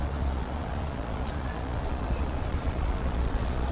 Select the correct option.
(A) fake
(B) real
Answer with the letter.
A